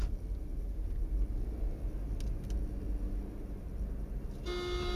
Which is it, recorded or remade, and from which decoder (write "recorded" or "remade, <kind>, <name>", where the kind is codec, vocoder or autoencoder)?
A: recorded